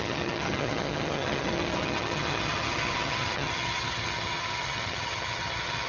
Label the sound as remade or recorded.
remade